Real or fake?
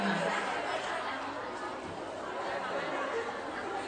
real